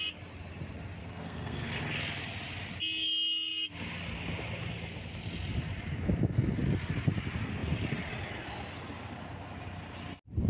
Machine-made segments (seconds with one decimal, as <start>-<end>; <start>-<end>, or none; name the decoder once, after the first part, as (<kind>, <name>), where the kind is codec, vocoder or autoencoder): 1.0-1.8 (codec, SNAC)